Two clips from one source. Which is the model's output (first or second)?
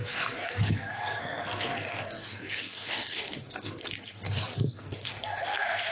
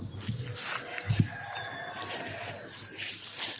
first